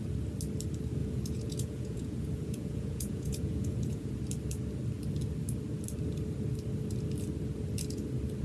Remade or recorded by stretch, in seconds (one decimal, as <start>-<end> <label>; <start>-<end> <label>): 0.0-1.0 recorded; 1.0-4.1 remade; 4.1-8.4 recorded